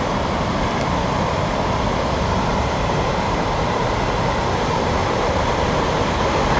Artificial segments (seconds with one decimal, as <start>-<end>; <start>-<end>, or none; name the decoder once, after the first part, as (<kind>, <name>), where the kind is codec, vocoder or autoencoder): 2.5-3.8 (vocoder, BigVGAN v2); 5.0-6.0